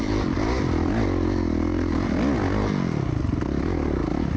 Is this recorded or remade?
recorded